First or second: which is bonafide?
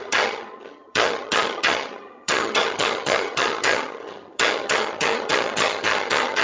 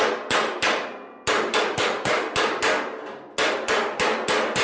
second